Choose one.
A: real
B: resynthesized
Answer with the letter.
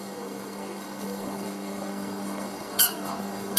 B